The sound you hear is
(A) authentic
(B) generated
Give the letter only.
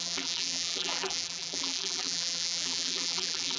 B